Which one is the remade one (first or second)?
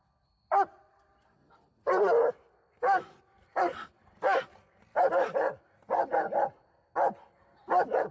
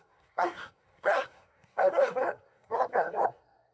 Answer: second